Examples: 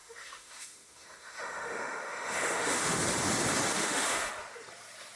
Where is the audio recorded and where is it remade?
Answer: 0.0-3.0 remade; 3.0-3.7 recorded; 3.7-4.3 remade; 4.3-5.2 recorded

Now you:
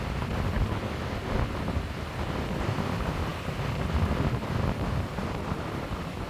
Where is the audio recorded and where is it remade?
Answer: 0.0-6.3 recorded

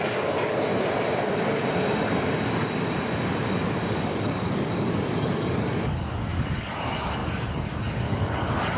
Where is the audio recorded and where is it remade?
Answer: 0.0-0.7 remade; 0.7-3.9 recorded; 3.9-8.8 remade

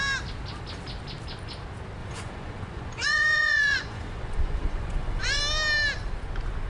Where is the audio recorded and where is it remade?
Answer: 0.0-2.0 recorded; 2.0-5.4 remade; 5.4-6.7 recorded